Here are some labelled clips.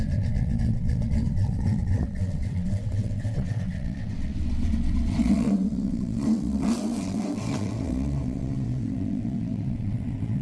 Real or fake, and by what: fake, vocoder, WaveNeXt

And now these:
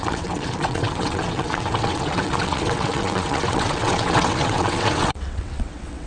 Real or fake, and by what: fake, vocoder, WaveNeXt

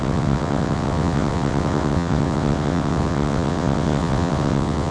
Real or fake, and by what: fake, vocoder, WaveNeXt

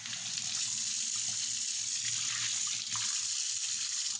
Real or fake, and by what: real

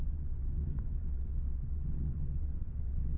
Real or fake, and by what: fake, vocoder, WaveNeXt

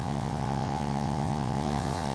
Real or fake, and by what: fake, vocoder, WaveNeXt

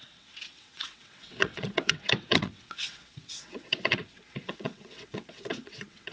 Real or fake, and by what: fake, vocoder, WaveNeXt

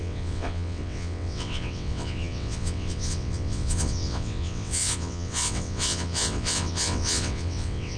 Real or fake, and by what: fake, vocoder, WaveNeXt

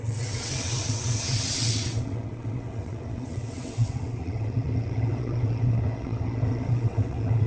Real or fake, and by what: fake, vocoder, WaveNeXt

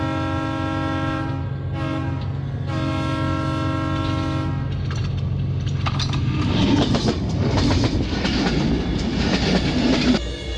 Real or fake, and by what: real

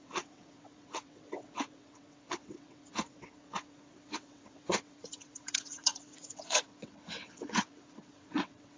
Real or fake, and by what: fake, vocoder, WaveNeXt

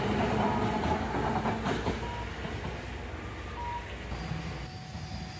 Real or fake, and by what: real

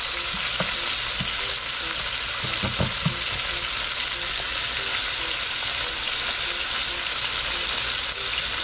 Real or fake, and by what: real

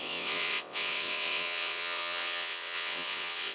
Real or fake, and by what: fake, vocoder, WaveNeXt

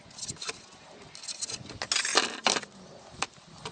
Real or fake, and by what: real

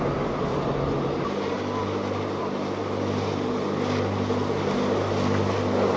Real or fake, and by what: real